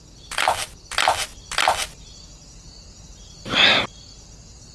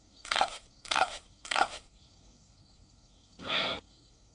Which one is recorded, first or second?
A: first